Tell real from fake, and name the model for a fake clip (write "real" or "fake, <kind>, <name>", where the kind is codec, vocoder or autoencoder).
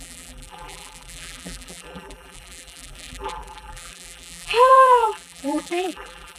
fake, vocoder, BigVGAN v2